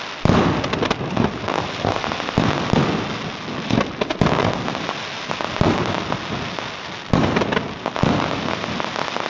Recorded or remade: recorded